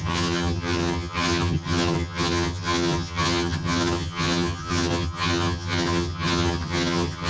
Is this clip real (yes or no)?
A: no